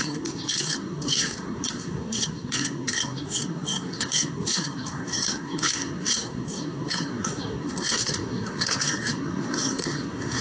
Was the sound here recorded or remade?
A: remade